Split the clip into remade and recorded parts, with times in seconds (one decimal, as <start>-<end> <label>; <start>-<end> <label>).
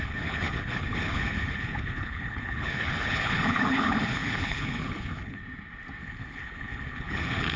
0.0-5.4 remade; 5.4-6.0 recorded; 6.0-7.6 remade